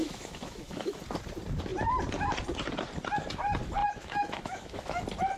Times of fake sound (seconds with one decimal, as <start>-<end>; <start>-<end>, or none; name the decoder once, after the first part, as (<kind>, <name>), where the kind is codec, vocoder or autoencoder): 0.0-1.0 (autoencoder, DAC-VAE); 3.8-5.0